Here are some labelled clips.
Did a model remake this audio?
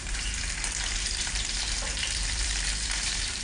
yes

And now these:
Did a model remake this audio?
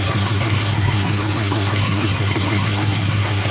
yes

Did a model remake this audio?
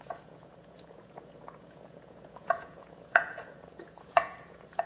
yes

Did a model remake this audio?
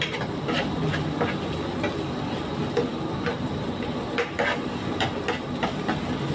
no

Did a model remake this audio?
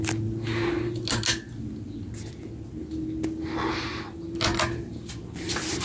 no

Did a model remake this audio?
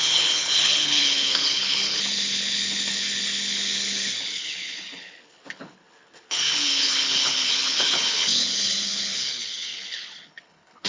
yes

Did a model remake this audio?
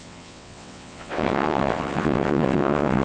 yes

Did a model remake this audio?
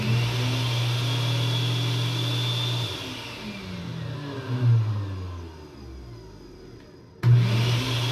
no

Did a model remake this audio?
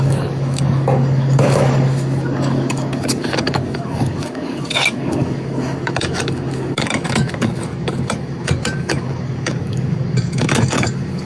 yes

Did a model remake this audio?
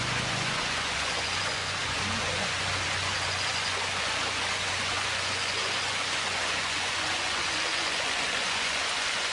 yes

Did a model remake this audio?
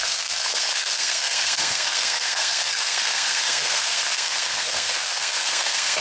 yes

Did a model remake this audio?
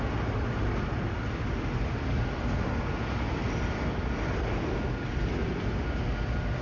no